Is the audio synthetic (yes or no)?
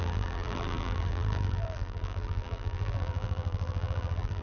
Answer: yes